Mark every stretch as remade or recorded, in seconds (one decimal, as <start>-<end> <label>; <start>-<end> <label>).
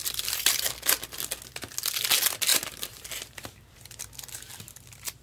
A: 0.0-0.7 remade; 0.7-2.5 recorded; 2.5-3.8 remade; 3.8-5.2 recorded